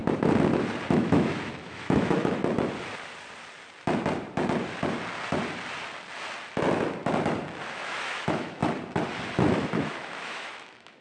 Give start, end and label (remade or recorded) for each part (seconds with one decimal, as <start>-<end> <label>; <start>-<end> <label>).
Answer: 0.0-0.9 recorded; 0.9-2.4 remade; 2.4-7.6 recorded; 7.6-8.6 remade; 8.6-9.5 recorded; 9.5-11.0 remade

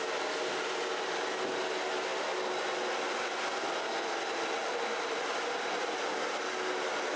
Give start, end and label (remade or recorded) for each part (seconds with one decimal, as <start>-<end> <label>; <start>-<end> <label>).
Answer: 0.0-2.1 recorded; 2.1-2.6 remade; 2.6-4.6 recorded; 4.6-5.7 remade; 5.7-7.2 recorded

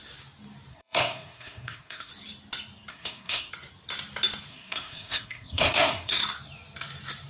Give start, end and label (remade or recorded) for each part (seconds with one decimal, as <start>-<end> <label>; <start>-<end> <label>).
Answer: 0.0-0.7 recorded; 0.7-2.1 remade; 2.1-2.9 recorded; 2.9-3.5 remade; 3.5-4.5 recorded; 4.5-6.2 remade; 6.2-7.3 recorded

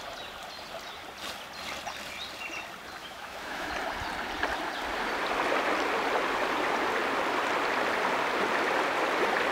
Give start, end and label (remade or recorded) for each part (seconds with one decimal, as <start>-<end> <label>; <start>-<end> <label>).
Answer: 0.0-3.0 recorded; 3.0-3.7 remade; 3.7-9.5 recorded

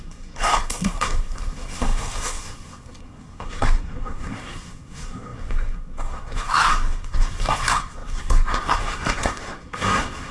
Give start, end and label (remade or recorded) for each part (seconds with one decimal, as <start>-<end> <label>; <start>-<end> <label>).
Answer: 0.0-10.3 remade

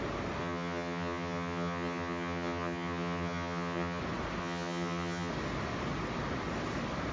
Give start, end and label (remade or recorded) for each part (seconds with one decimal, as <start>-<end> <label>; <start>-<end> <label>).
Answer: 0.0-0.4 recorded; 0.4-4.0 remade; 4.0-4.4 recorded; 4.4-5.3 remade; 5.3-7.1 recorded

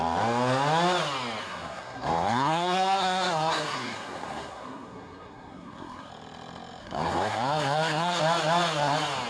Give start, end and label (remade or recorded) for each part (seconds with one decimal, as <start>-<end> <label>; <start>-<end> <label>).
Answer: 0.0-1.4 recorded; 1.4-6.1 remade; 6.1-6.8 recorded; 6.8-8.2 remade; 8.2-9.3 recorded

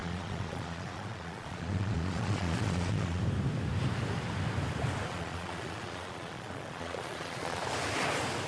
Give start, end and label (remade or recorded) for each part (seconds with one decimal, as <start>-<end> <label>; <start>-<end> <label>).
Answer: 0.0-3.2 remade; 3.2-5.1 recorded; 5.1-7.6 remade; 7.6-8.5 recorded